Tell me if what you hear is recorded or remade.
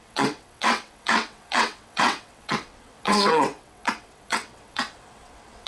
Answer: remade